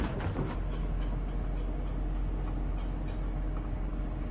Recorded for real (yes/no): yes